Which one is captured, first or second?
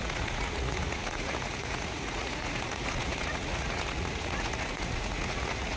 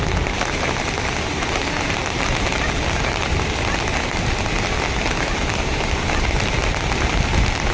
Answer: second